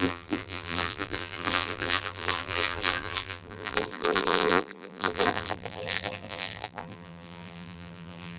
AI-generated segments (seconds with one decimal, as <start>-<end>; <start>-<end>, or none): 0.0-8.4